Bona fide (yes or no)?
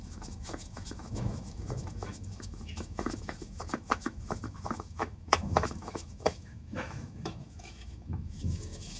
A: no